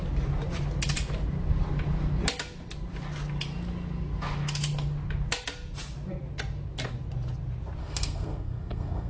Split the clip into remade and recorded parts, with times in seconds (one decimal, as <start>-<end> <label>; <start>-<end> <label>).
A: 0.0-7.8 recorded; 7.8-9.1 remade